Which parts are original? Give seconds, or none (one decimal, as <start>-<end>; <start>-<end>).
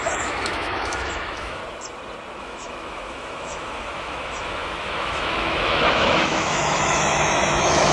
1.6-2.4